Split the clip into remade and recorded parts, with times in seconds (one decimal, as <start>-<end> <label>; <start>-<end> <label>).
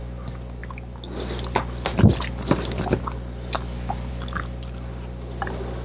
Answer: 0.0-5.8 recorded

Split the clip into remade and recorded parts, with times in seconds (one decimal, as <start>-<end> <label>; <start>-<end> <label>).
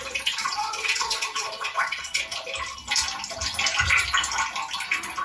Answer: 0.0-0.4 recorded; 0.4-2.2 remade; 2.2-5.2 recorded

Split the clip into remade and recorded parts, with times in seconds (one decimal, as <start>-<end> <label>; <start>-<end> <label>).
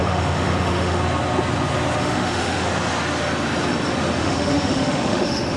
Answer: 0.0-1.0 remade; 1.0-2.0 recorded; 2.0-2.7 remade; 2.7-4.2 recorded; 4.2-5.6 remade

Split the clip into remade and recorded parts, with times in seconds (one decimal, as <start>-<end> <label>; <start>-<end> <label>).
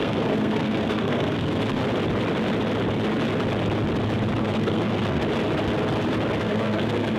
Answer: 0.0-1.8 remade; 1.8-4.4 recorded; 4.4-5.2 remade; 5.2-6.4 recorded; 6.4-7.2 remade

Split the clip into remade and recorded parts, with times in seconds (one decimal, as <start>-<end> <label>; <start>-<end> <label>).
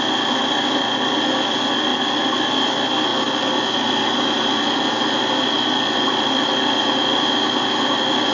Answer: 0.0-1.9 recorded; 1.9-2.5 remade; 2.5-3.1 recorded; 3.1-6.9 remade; 6.9-8.3 recorded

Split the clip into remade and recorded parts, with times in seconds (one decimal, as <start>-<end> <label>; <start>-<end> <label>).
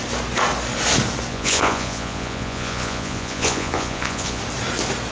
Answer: 0.0-1.3 recorded; 1.3-4.4 remade; 4.4-5.1 recorded